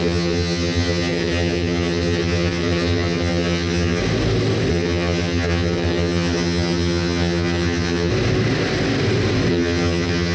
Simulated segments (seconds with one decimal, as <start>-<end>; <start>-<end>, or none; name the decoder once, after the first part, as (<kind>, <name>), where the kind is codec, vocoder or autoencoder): 0.0-4.0 (vocoder, HiFi-GAN); 4.7-8.1; 9.5-10.3